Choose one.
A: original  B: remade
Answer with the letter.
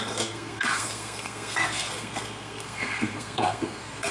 B